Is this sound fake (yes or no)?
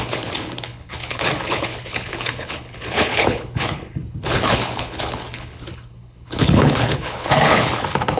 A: yes